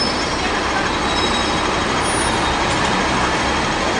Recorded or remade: recorded